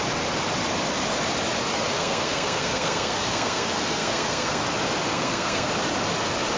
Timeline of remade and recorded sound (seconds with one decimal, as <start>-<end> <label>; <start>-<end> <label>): 0.0-1.6 recorded; 1.6-4.6 remade; 4.6-5.1 recorded; 5.1-5.7 remade; 5.7-6.6 recorded